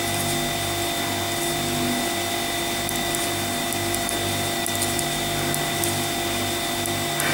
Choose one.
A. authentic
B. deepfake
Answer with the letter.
A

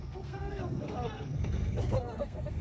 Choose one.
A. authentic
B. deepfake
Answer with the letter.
B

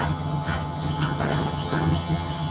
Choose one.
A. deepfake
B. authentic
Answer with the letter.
A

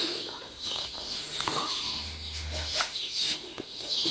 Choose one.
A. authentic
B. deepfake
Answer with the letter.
B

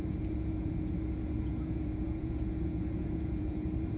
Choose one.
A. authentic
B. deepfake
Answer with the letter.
B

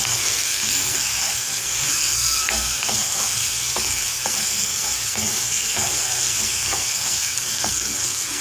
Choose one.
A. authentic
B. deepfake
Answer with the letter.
B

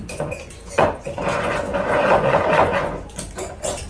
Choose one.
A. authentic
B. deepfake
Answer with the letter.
B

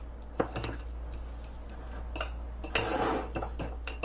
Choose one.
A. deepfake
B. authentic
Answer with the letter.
B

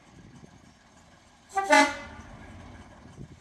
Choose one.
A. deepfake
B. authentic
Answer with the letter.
B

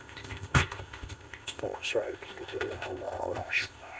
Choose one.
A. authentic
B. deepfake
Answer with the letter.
B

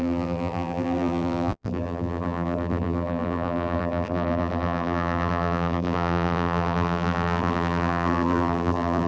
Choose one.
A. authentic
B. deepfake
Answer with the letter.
B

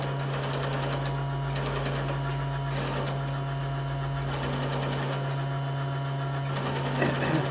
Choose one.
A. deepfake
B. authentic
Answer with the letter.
B